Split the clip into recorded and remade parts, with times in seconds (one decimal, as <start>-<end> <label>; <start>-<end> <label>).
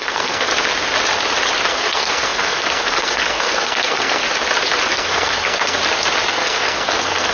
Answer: 0.0-0.5 remade; 0.5-1.7 recorded; 1.7-4.2 remade; 4.2-4.9 recorded; 4.9-5.8 remade; 5.8-6.3 recorded; 6.3-7.3 remade